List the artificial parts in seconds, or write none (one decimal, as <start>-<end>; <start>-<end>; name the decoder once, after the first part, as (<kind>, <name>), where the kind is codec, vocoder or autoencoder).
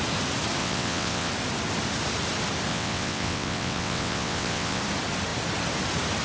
0.6-1.3 (vocoder, WaveNeXt); 2.7-4.8